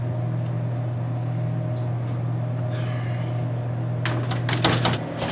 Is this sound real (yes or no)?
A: yes